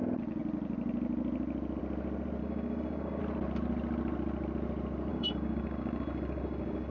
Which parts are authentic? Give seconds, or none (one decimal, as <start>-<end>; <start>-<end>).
0.0-2.4; 3.2-5.1